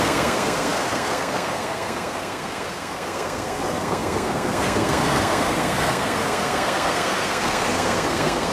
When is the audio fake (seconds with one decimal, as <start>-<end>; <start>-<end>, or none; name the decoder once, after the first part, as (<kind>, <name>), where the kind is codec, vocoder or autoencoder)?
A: 0.0-8.5 (codec, SNAC)